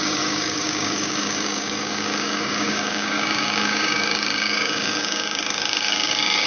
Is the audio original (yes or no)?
no